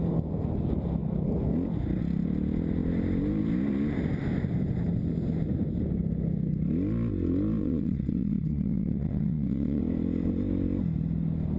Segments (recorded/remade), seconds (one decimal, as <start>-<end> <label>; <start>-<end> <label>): 0.0-7.6 recorded; 7.6-9.8 remade; 9.8-11.6 recorded